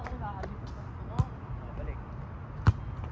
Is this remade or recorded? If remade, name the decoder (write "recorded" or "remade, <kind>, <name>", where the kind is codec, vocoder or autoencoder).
recorded